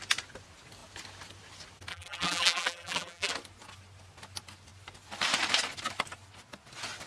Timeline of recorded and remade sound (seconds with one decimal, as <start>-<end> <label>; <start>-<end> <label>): 0.0-1.9 recorded; 1.9-3.3 remade; 3.3-7.1 recorded